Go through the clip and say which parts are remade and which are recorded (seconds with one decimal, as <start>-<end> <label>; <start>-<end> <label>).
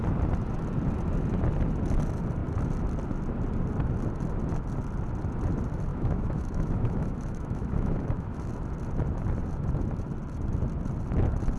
0.0-5.9 recorded; 5.9-8.5 remade; 8.5-11.6 recorded